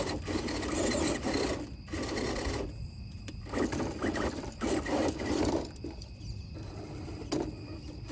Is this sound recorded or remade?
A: recorded